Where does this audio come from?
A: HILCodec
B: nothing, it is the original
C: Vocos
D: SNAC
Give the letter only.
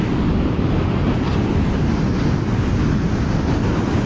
B